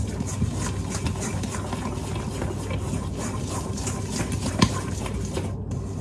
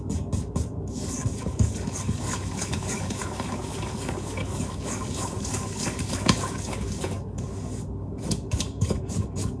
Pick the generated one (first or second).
second